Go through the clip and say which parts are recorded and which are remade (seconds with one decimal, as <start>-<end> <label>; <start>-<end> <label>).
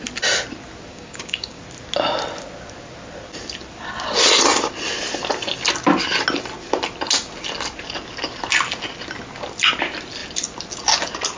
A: 0.0-0.9 recorded; 0.9-1.6 remade; 1.6-11.4 recorded